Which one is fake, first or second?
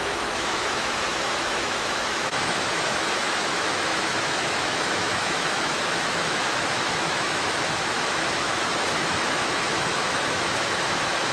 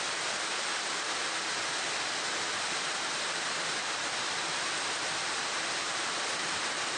first